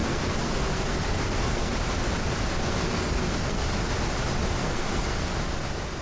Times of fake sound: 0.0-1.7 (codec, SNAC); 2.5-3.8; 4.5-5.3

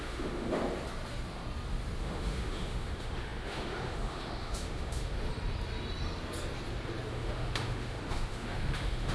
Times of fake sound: 0.0-0.6 (autoencoder, DAC-VAE); 2.0-5.3; 7.1-9.1

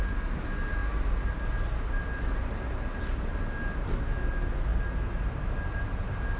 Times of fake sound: none